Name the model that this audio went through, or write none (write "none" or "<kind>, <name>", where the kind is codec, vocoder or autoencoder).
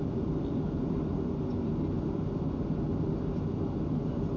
none